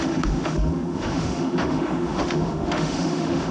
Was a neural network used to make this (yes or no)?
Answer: yes